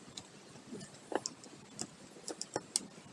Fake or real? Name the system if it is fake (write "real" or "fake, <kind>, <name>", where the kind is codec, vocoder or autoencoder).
real